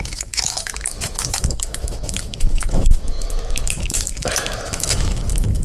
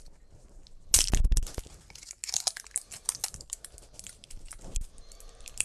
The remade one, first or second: first